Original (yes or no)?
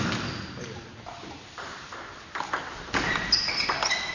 yes